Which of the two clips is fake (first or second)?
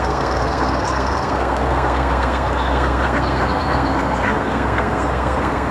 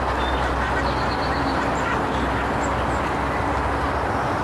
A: first